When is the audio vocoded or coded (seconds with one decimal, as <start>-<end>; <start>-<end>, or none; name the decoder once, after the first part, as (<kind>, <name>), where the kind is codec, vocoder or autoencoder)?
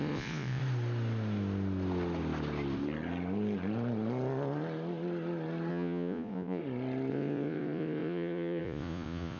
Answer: 0.0-0.6 (vocoder, Vocos); 5.7-6.6; 7.1-9.4